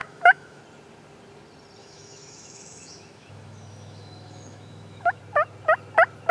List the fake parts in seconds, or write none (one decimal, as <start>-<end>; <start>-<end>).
0.0-0.6; 1.8-5.2